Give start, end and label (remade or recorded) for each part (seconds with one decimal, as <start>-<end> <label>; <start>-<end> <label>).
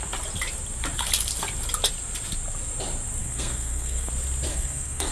0.0-3.2 recorded; 3.2-4.1 remade; 4.1-4.5 recorded; 4.5-5.1 remade